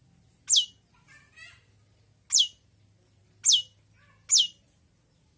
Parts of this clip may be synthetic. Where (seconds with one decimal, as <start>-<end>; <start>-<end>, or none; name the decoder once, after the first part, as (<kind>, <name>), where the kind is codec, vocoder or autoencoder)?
none